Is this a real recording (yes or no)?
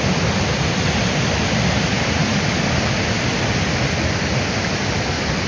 yes